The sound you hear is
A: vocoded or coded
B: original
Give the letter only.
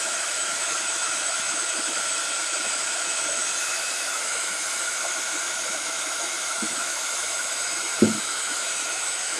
A